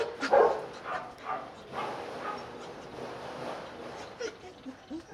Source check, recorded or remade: recorded